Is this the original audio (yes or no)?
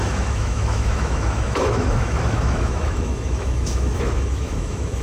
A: no